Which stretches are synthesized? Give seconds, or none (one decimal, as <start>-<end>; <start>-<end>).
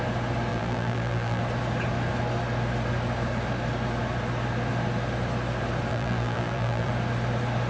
0.5-1.4; 5.9-6.9